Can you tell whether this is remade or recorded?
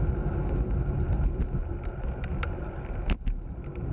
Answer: recorded